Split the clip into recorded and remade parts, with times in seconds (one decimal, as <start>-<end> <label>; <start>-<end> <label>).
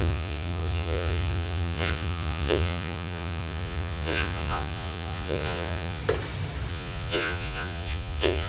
0.0-6.0 remade; 6.0-6.7 recorded; 6.7-8.5 remade